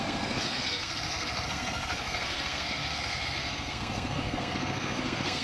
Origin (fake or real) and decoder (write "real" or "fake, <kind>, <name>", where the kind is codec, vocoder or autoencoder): fake, codec, SNAC